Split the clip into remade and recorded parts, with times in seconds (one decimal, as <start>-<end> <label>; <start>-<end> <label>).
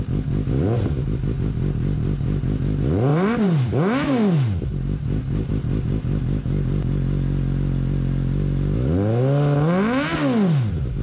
0.0-3.1 recorded; 3.1-5.5 remade; 5.5-11.0 recorded